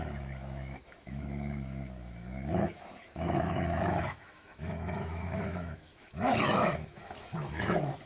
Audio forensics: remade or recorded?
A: remade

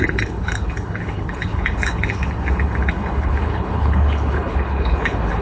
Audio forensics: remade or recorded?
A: remade